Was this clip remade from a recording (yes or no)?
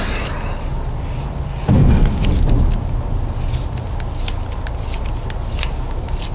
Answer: no